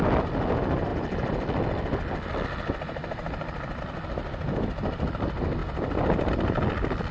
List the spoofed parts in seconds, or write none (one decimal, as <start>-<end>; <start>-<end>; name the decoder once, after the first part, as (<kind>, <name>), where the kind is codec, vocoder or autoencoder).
none